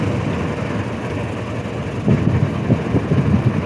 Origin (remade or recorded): recorded